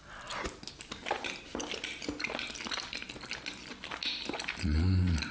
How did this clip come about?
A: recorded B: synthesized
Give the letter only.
A